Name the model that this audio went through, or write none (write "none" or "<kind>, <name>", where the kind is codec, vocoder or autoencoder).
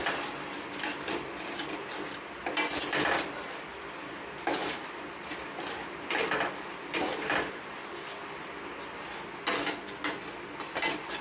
none